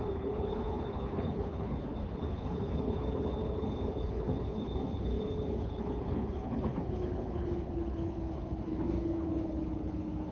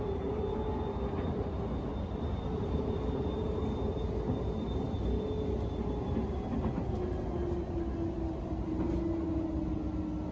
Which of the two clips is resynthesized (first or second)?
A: first